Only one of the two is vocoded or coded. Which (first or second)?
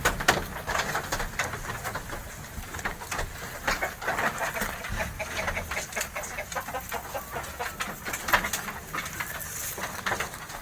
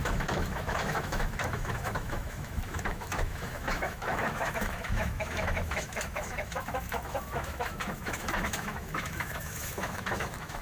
second